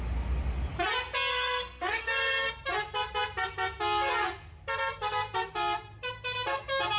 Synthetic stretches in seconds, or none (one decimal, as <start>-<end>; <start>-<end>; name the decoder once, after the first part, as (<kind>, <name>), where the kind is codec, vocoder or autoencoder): 1.3-2.5 (codec, SNAC)